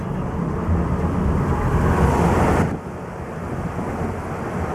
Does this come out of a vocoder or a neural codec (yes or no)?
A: no